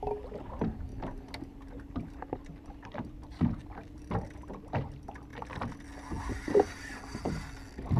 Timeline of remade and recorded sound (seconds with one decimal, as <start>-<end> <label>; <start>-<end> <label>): 0.0-8.0 recorded